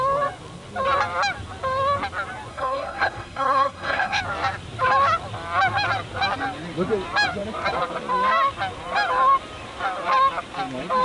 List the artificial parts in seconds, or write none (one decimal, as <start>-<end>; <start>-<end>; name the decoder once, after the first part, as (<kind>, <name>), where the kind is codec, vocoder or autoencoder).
2.5-4.2 (codec, SNAC)